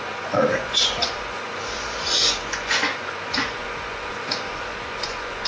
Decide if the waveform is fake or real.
fake